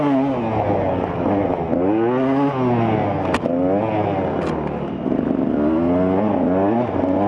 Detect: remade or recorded recorded